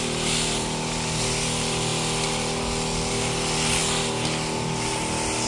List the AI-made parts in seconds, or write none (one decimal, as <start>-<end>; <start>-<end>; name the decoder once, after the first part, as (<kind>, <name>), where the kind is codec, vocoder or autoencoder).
none

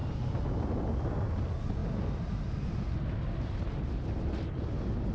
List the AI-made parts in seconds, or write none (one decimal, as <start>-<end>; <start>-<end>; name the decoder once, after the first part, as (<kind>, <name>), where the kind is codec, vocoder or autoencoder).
none